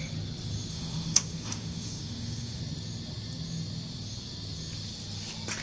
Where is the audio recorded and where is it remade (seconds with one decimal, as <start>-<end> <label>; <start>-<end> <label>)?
0.0-0.7 recorded; 0.7-2.6 remade; 2.6-5.6 recorded